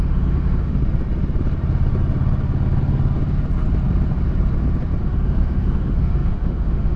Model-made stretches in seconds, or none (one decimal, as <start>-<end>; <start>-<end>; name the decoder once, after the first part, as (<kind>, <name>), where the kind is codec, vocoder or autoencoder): 0.0-0.8 (autoencoder, DAC-VAE); 5.0-7.0